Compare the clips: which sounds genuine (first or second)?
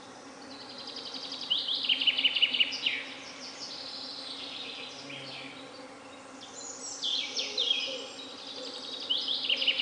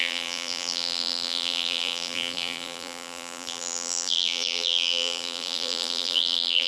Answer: first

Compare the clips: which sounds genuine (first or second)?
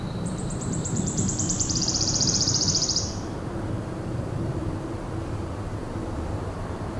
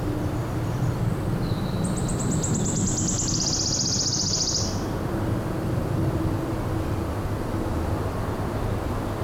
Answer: second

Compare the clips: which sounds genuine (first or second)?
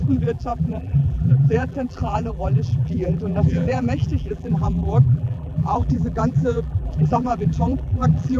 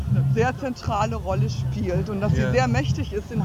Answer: second